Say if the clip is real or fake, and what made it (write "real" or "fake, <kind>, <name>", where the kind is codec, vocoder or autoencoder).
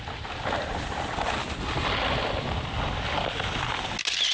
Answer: real